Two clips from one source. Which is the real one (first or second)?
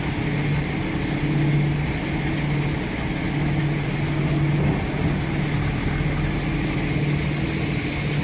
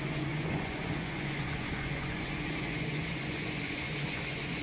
first